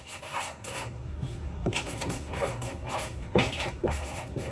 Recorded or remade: remade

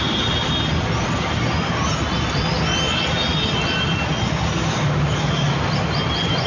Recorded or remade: recorded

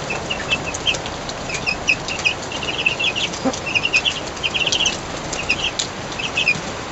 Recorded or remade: recorded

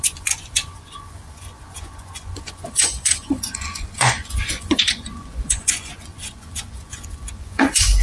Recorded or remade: remade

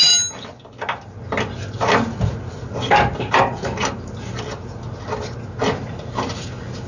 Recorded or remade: recorded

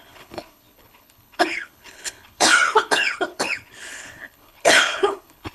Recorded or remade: remade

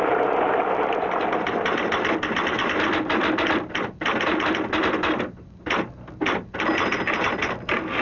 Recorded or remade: recorded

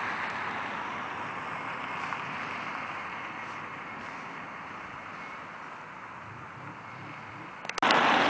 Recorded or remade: recorded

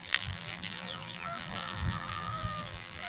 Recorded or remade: remade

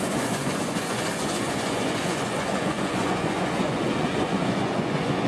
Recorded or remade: remade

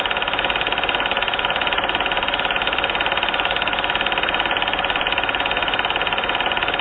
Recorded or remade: recorded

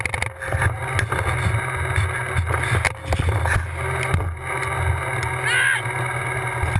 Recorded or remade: recorded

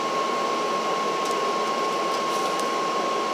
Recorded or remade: recorded